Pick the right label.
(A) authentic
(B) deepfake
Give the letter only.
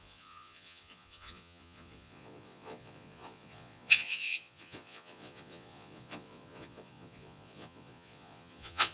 B